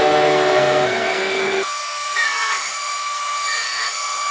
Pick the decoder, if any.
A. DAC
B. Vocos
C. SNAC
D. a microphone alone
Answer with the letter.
C